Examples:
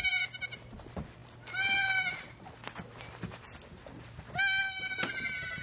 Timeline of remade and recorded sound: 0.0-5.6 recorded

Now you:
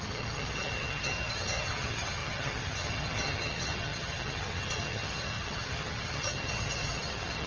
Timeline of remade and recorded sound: 0.0-7.5 remade

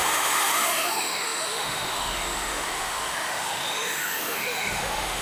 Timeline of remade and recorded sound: 0.0-5.2 remade

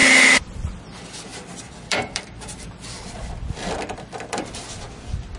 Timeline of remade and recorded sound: 0.0-1.3 recorded; 1.3-4.5 remade; 4.5-5.4 recorded

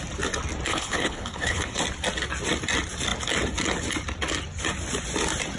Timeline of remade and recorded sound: 0.0-0.7 recorded; 0.7-1.8 remade; 1.8-5.6 recorded

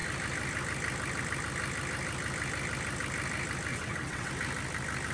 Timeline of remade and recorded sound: 0.0-3.7 recorded; 3.7-4.3 remade; 4.3-5.1 recorded